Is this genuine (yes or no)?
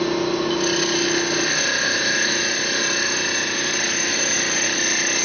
yes